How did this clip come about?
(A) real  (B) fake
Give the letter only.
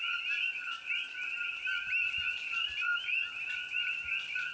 A